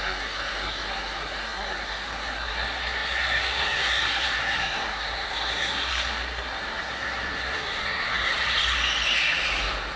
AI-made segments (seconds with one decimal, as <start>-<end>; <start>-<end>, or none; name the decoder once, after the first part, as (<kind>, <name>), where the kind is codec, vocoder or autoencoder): 0.0-8.3 (codec, SNAC)